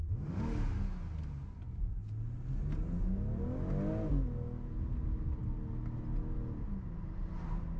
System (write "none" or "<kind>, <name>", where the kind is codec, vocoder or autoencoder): none